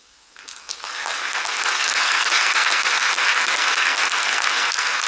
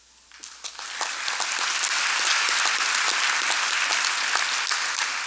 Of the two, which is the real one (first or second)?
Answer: second